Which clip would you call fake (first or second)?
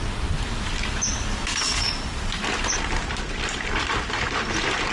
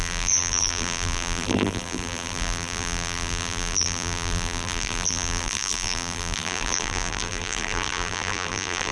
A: second